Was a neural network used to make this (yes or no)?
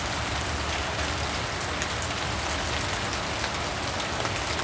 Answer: no